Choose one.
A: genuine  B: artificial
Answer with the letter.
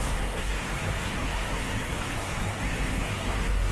B